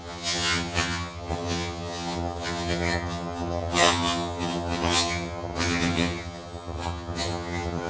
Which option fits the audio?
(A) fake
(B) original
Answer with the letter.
A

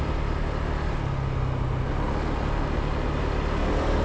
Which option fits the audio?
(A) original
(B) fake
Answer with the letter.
A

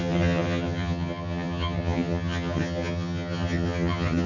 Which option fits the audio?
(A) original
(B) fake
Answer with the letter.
B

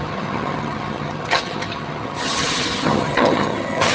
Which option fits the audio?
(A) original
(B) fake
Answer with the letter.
B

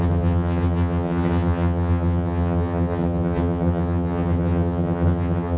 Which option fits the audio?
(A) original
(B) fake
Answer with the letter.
B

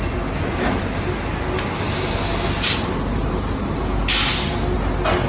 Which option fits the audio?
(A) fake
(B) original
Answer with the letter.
B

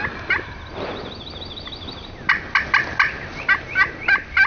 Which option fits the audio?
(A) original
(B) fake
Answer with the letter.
A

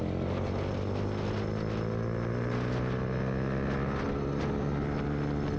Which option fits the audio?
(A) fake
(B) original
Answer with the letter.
B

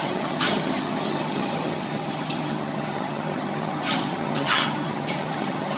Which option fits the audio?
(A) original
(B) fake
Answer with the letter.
B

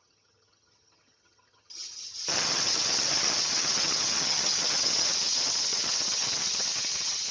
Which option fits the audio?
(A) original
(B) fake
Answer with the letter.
B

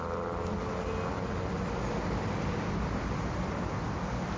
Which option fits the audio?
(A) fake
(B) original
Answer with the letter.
B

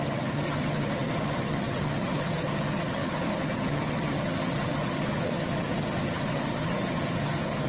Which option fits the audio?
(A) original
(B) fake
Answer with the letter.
B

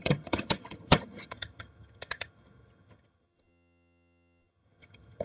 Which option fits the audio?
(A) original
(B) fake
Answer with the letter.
B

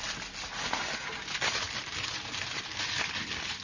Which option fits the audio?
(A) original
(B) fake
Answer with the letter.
A